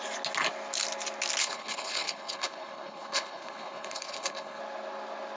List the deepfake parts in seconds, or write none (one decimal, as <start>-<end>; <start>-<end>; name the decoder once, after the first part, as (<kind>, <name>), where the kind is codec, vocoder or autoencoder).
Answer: 1.4-4.6 (codec, HILCodec)